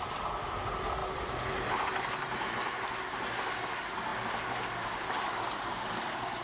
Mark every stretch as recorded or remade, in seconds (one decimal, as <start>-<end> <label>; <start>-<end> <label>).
0.0-6.4 recorded